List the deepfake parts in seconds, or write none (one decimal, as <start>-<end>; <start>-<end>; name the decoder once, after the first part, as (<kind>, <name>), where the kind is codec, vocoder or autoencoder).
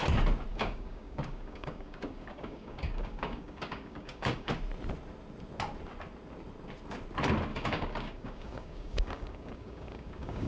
0.5-4.5 (codec, DAC); 7.5-10.5